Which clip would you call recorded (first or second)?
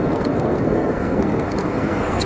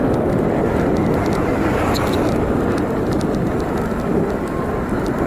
second